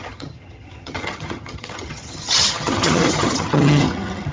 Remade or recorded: remade